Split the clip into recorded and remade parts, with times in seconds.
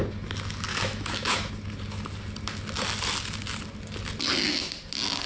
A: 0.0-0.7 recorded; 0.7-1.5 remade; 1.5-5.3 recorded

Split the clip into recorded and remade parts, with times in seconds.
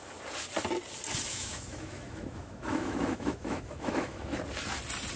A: 0.0-1.3 recorded; 1.3-4.4 remade; 4.4-5.2 recorded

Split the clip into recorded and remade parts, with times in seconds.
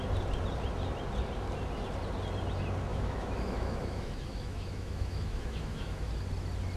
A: 0.0-2.9 recorded; 2.9-6.1 remade; 6.1-6.8 recorded